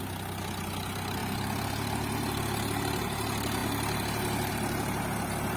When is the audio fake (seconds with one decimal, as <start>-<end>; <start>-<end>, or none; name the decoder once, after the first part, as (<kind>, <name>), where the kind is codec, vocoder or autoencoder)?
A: none